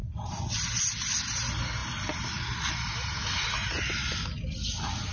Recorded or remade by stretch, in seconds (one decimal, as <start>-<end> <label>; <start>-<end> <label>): 0.0-5.1 recorded